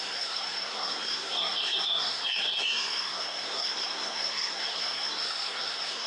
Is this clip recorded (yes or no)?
no